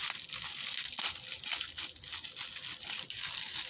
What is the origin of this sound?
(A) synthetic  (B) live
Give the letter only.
B